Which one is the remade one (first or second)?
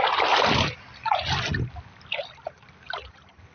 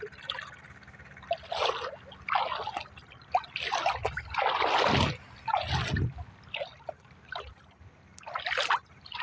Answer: first